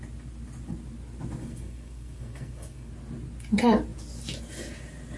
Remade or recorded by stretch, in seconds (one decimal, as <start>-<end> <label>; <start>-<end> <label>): 0.0-1.4 recorded; 1.4-2.9 remade; 2.9-5.2 recorded

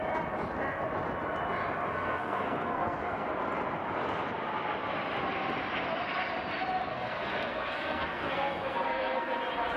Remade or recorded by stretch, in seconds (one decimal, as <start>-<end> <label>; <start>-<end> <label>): 0.0-1.9 recorded; 1.9-3.3 remade; 3.3-6.9 recorded; 6.9-9.4 remade; 9.4-9.8 recorded

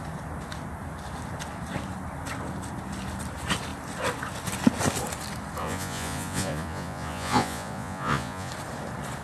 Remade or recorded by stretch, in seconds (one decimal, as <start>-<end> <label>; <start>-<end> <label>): 0.0-5.6 recorded; 5.6-8.5 remade; 8.5-9.2 recorded

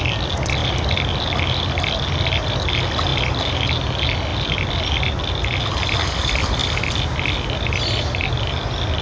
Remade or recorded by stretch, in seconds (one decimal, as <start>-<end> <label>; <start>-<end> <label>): 0.0-9.0 recorded